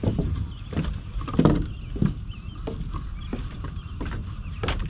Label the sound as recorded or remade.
recorded